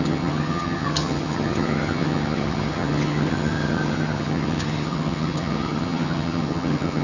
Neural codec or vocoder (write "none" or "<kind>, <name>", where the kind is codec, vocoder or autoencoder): vocoder, HiFi-GAN